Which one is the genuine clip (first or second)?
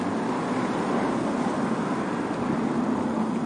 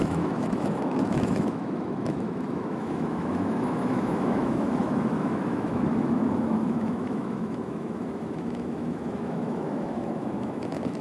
first